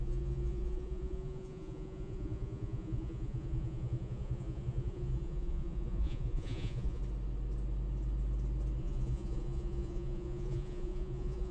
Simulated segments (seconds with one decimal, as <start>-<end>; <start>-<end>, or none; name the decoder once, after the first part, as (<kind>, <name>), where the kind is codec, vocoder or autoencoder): 0.0-7.0 (vocoder, Vocos); 8.8-11.5